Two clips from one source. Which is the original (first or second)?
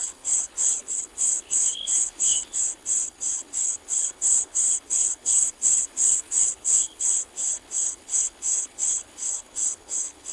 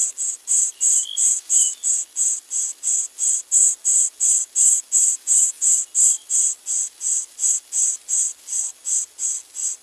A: second